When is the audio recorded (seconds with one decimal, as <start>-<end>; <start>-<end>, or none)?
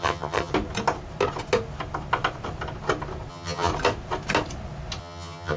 0.5-3.3; 3.7-5.0